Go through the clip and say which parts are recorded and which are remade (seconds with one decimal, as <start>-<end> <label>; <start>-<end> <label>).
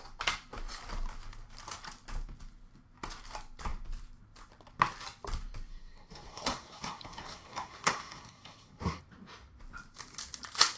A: 0.0-5.7 recorded; 5.7-9.0 remade; 9.0-10.8 recorded